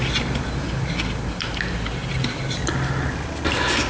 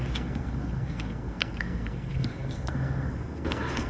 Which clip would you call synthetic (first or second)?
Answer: second